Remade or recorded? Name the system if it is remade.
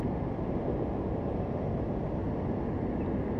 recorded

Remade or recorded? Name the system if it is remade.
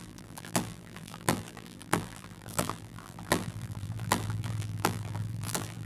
remade, vocoder, BigVGAN v2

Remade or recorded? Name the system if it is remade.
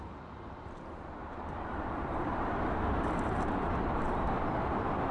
remade, vocoder, BigVGAN v2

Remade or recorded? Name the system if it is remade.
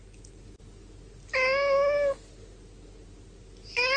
recorded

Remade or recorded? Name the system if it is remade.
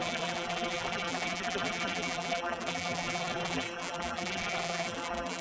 remade, vocoder, BigVGAN v2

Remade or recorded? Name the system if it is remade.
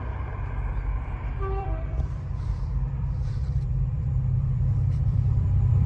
remade, vocoder, BigVGAN v2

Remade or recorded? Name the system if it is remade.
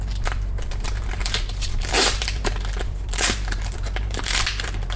remade, vocoder, BigVGAN v2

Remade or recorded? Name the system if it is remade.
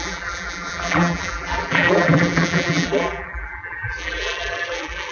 remade, vocoder, BigVGAN v2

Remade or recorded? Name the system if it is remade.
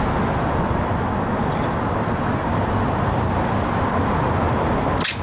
recorded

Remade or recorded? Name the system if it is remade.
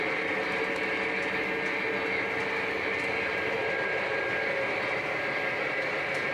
recorded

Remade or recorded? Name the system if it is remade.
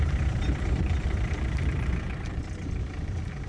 remade, vocoder, BigVGAN v2